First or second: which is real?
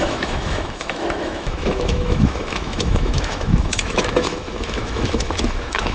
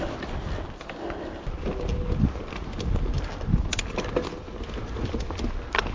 second